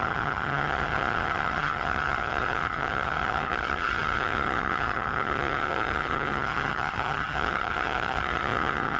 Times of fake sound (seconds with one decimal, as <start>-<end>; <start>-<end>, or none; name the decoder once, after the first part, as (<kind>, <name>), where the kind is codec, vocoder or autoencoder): 0.0-9.0 (vocoder, HiFi-GAN)